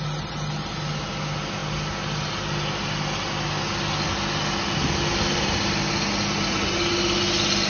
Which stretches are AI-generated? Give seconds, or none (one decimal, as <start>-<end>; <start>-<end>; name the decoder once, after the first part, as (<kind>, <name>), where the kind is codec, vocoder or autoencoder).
none